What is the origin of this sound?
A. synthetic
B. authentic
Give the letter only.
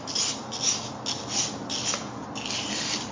B